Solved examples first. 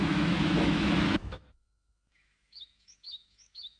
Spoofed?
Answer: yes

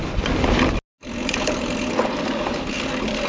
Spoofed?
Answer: no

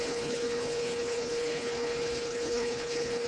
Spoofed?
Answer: yes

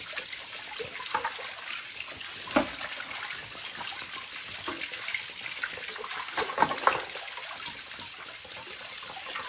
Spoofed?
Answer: no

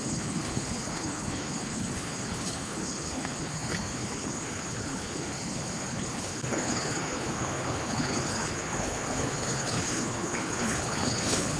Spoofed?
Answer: yes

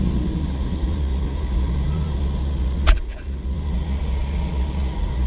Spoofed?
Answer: yes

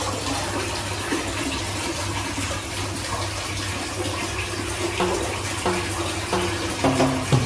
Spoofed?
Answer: no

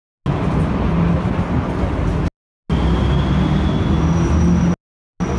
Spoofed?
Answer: no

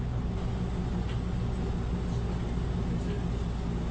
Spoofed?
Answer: no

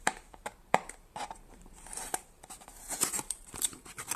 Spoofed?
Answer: yes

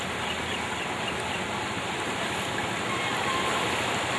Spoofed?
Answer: no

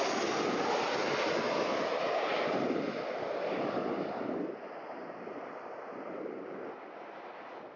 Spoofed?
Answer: no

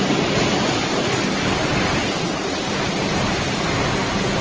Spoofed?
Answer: no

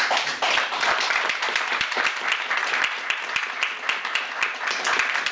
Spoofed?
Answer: no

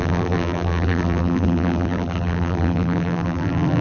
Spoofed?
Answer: yes